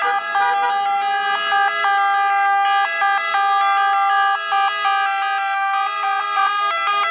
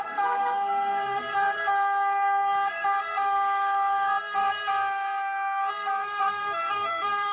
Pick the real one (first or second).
first